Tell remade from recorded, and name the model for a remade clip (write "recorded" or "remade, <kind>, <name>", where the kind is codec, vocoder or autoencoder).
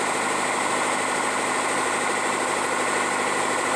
recorded